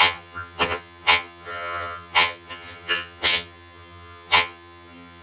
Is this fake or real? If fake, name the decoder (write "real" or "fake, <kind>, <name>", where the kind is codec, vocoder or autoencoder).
fake, vocoder, HiFi-GAN